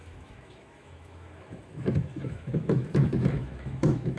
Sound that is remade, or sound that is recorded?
remade